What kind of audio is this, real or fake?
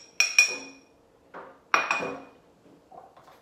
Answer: real